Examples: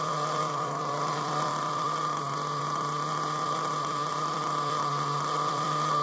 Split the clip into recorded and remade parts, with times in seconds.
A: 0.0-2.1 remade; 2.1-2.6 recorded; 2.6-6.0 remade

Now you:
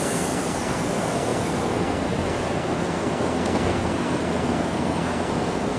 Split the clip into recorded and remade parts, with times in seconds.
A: 0.0-5.8 remade

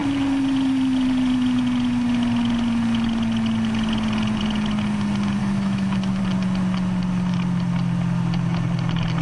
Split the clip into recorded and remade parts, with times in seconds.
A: 0.0-5.4 recorded; 5.4-6.2 remade; 6.2-9.2 recorded

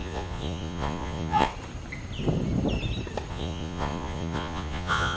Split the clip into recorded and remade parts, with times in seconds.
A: 0.0-1.5 remade; 1.5-3.3 recorded; 3.3-5.2 remade

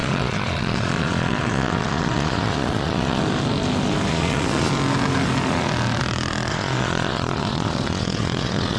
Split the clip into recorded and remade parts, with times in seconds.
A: 0.0-3.2 remade; 3.2-4.1 recorded; 4.1-4.7 remade; 4.7-6.5 recorded; 6.5-8.8 remade

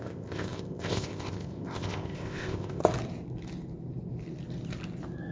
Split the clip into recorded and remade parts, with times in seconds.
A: 0.0-2.8 remade; 2.8-5.3 recorded

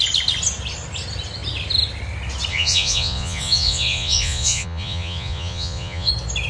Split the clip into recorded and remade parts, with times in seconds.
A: 0.0-2.5 recorded; 2.5-6.1 remade; 6.1-6.5 recorded

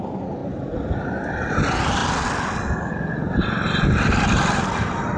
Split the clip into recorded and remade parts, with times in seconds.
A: 0.0-0.4 recorded; 0.4-1.6 remade; 1.6-5.2 recorded